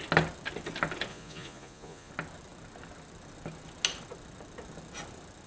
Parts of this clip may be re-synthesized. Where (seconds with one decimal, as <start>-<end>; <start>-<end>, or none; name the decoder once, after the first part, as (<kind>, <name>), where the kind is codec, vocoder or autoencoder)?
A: 1.1-2.1 (vocoder, Vocos)